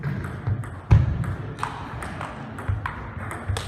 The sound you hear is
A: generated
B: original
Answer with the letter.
B